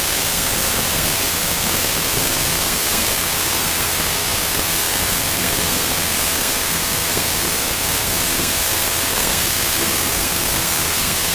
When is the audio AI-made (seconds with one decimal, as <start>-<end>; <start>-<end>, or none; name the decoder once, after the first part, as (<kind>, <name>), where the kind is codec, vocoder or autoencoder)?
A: 0.0-11.3 (codec, SNAC)